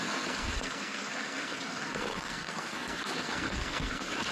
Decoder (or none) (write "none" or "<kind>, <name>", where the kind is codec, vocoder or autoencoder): codec, SNAC